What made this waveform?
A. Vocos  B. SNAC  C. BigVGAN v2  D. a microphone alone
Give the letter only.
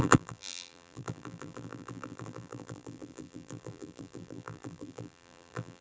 C